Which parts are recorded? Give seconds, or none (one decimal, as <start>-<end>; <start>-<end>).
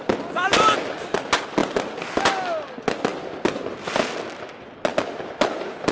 0.0-5.9